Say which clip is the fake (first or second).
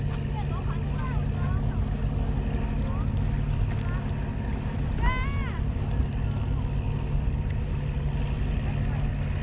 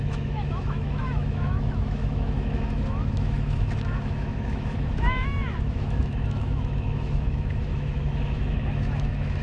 second